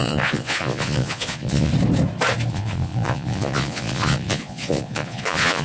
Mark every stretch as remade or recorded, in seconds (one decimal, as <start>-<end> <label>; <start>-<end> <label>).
0.0-1.7 remade; 1.7-2.5 recorded; 2.5-5.6 remade